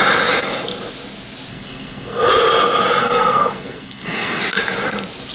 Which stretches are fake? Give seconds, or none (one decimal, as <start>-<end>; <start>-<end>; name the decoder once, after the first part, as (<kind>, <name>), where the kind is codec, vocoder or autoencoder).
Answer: 1.5-2.3 (codec, SNAC); 3.0-4.4